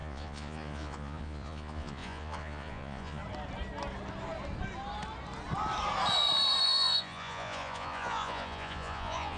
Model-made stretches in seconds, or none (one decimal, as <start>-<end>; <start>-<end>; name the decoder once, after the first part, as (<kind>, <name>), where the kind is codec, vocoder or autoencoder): 0.0-3.2 (vocoder, Vocos); 6.6-9.4